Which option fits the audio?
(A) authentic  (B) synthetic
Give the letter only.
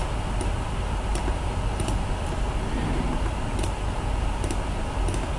A